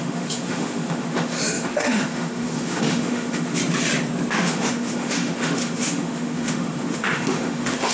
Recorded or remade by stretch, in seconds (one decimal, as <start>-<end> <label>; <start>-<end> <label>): 0.0-3.6 remade; 3.6-4.3 recorded; 4.3-7.9 remade